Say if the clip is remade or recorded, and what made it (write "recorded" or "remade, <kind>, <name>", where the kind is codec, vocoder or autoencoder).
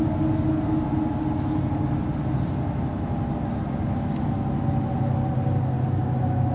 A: recorded